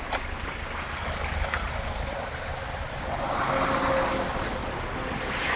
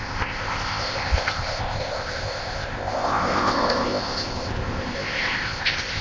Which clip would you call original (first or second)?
first